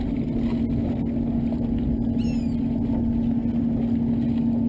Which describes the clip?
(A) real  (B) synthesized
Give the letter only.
A